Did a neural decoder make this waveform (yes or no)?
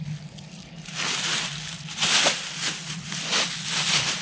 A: no